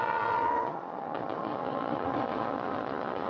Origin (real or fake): fake